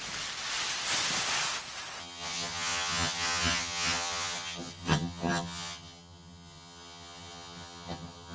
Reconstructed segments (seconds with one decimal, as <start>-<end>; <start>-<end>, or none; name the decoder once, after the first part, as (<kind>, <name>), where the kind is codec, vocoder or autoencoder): 2.0-8.3 (vocoder, HiFi-GAN)